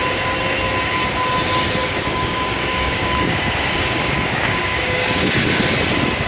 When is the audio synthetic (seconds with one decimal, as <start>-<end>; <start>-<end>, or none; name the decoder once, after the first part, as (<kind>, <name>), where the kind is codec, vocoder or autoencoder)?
1.8-5.6 (codec, DAC)